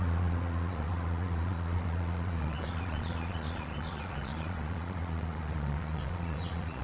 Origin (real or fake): fake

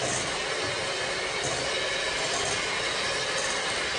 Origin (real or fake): real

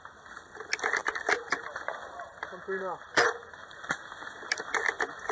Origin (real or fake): real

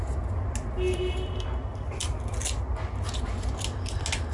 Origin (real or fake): real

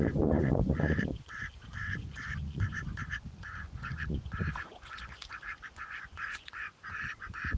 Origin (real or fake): fake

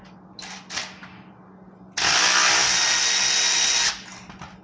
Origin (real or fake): real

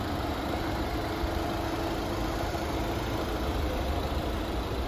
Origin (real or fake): real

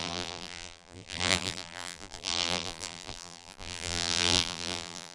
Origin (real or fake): fake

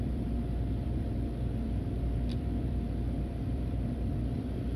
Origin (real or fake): fake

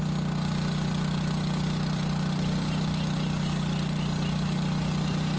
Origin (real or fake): real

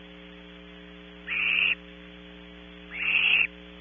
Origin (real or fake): real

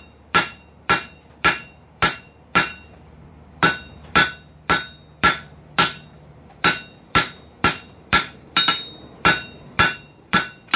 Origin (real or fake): fake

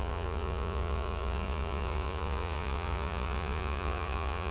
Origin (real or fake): fake